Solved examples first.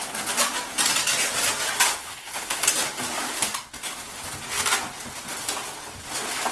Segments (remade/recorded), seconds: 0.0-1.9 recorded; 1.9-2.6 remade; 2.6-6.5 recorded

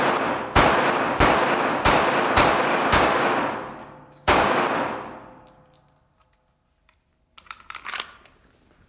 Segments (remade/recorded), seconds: 0.0-2.7 recorded; 2.7-3.4 remade; 3.4-3.8 recorded; 3.8-4.6 remade; 4.6-8.9 recorded

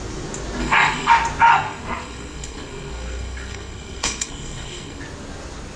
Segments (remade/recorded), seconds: 0.0-0.6 recorded; 0.6-1.1 remade; 1.1-1.5 recorded; 1.5-5.0 remade; 5.0-5.8 recorded

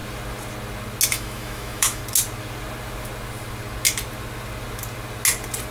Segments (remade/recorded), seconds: 0.0-1.1 recorded; 1.1-2.0 remade; 2.0-5.7 recorded

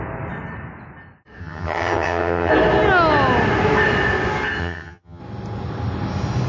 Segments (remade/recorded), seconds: 0.0-1.4 recorded; 1.4-2.5 remade; 2.5-4.6 recorded; 4.6-5.2 remade; 5.2-6.5 recorded

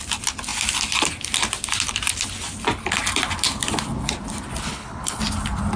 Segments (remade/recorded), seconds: 0.0-4.7 recorded; 4.7-5.2 remade; 5.2-5.8 recorded